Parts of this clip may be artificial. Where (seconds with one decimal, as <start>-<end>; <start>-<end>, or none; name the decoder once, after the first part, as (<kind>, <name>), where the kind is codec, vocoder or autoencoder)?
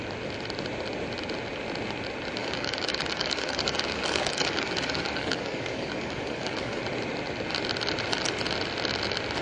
2.4-6.8 (codec, DAC)